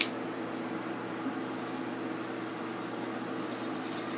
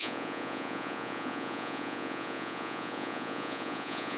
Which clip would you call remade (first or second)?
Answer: second